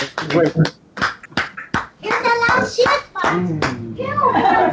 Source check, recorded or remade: recorded